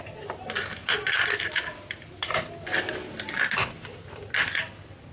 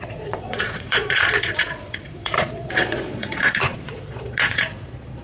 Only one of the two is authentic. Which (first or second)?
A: first